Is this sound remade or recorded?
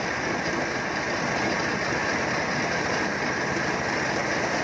recorded